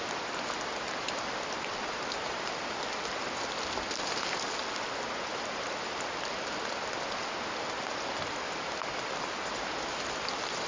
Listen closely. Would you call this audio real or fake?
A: real